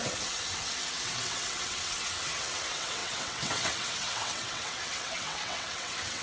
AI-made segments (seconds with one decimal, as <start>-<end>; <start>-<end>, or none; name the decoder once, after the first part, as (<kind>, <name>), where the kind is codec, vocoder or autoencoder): 0.0-6.2 (vocoder, WaveNeXt)